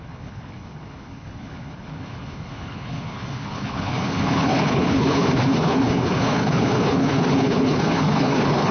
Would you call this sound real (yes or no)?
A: no